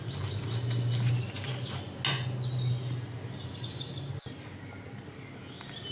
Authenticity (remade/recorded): recorded